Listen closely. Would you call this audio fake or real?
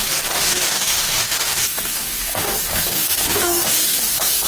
fake